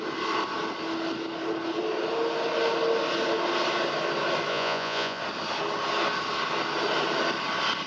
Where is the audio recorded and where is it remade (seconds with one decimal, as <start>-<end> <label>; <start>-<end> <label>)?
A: 0.0-4.5 recorded; 4.5-5.2 remade; 5.2-7.9 recorded